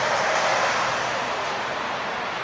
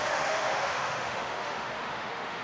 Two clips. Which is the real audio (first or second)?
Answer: first